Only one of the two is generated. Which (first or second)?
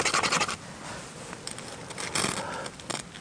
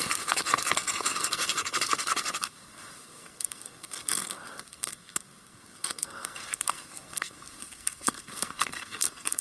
second